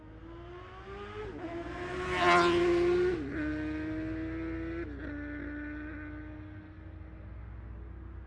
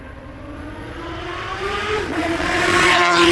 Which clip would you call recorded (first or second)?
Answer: first